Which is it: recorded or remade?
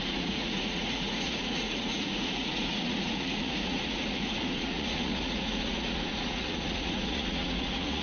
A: remade